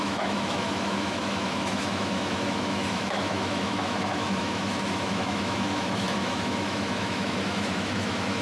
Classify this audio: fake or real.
fake